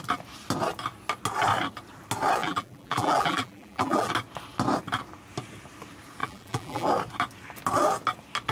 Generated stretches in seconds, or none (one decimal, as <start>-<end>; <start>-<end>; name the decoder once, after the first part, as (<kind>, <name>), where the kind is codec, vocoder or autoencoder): 2.4-4.1 (vocoder, BigVGAN v2); 6.2-6.9